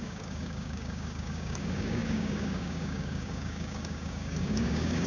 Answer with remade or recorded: remade